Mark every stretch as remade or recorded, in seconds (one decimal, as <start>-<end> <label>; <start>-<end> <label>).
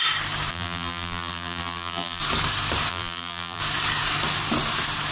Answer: 0.0-0.5 recorded; 0.5-2.2 remade; 2.2-2.9 recorded; 2.9-3.6 remade; 3.6-5.1 recorded